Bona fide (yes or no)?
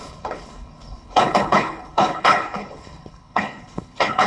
no